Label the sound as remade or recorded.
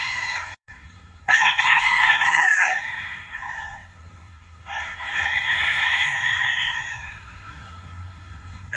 remade